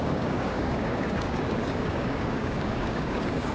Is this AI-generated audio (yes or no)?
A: yes